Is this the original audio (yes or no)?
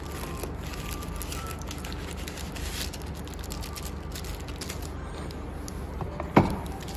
yes